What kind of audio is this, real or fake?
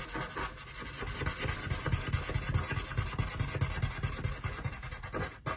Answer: real